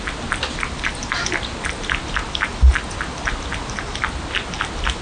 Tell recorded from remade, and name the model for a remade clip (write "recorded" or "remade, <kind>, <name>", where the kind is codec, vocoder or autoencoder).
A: recorded